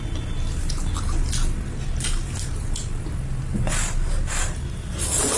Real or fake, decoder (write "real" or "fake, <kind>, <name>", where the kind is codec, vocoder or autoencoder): real